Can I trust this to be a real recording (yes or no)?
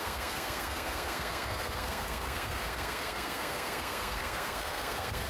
no